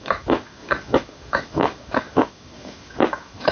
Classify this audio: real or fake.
fake